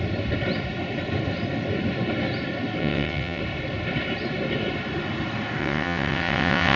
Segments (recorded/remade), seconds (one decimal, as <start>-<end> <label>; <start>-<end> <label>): 0.0-2.8 recorded; 2.8-3.4 remade; 3.4-5.6 recorded; 5.6-6.8 remade